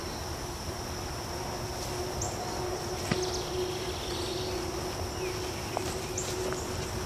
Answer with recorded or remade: recorded